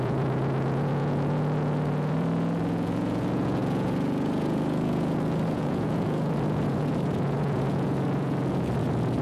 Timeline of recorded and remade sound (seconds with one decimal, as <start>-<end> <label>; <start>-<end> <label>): 0.0-9.2 remade